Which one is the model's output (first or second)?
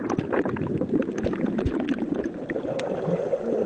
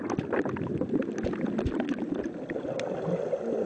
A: first